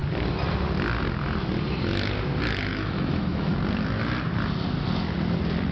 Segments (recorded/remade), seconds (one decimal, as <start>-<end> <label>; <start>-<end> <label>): 0.0-2.7 recorded; 2.7-3.6 remade; 3.6-5.7 recorded